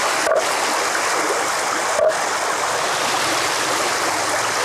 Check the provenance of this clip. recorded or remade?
recorded